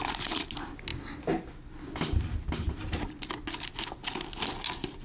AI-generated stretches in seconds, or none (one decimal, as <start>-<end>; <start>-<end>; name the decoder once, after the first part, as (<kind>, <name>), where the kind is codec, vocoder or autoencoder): none